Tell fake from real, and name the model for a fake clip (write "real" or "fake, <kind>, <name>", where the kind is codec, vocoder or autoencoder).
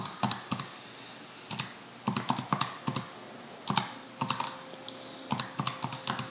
real